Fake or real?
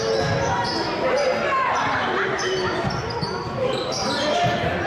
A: real